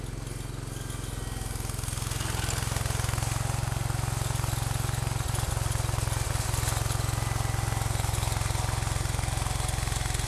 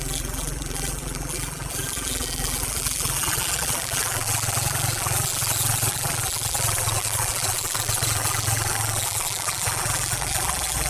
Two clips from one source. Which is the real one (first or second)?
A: first